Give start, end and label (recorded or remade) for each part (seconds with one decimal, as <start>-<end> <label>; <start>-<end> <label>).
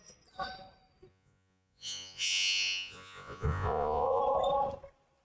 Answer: 0.0-1.1 recorded; 1.1-4.2 remade; 4.2-5.2 recorded